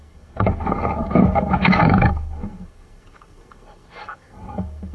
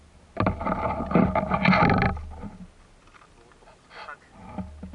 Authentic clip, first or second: second